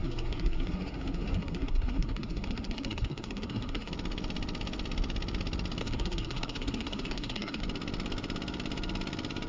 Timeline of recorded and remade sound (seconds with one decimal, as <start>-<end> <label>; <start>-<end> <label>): 0.0-3.9 remade; 3.9-5.8 recorded; 5.8-7.6 remade; 7.6-9.5 recorded